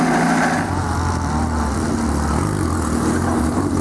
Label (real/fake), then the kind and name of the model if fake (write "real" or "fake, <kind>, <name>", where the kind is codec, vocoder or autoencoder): real